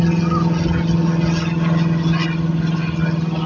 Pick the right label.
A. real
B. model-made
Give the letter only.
A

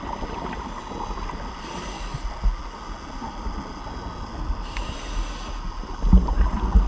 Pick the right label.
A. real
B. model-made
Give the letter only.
A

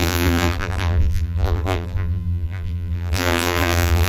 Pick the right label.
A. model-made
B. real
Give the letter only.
A